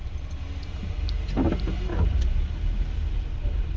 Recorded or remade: recorded